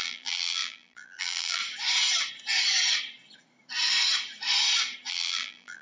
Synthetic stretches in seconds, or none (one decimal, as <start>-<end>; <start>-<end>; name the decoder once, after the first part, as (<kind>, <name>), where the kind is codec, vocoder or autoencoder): 0.0-1.6 (vocoder, BigVGAN v2); 5.1-5.8

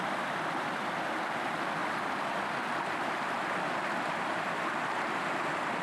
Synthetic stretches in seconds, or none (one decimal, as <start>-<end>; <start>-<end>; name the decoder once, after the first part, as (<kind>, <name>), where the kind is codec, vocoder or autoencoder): none

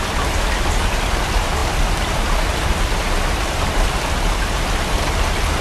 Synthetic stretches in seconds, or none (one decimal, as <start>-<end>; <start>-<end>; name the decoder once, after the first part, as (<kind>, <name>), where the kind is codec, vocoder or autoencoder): 1.6-4.7 (vocoder, BigVGAN v2)

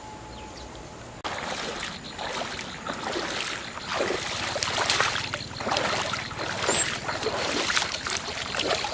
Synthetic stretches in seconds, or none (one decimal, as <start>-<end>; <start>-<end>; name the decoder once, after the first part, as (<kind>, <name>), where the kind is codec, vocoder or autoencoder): 7.0-7.6 (vocoder, BigVGAN v2)

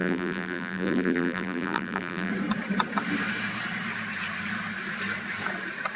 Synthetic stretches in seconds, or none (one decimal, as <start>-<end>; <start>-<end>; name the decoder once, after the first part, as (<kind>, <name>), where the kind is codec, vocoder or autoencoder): 0.0-2.3 (vocoder, BigVGAN v2)

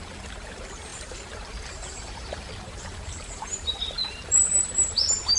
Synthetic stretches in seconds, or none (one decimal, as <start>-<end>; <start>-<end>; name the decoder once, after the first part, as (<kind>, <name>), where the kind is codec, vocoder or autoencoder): 0.0-5.4 (vocoder, BigVGAN v2)

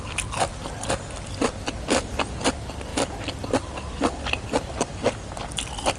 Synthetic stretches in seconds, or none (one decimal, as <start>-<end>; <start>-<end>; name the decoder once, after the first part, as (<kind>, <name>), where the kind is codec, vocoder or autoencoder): 0.5-2.4 (vocoder, BigVGAN v2); 2.9-5.3